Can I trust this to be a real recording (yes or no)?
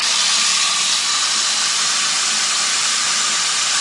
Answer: yes